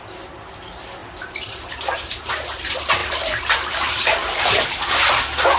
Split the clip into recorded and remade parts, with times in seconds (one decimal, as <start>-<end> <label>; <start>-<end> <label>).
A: 0.0-1.0 recorded; 1.0-2.3 remade; 2.3-5.6 recorded